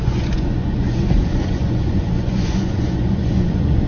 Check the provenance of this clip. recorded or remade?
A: remade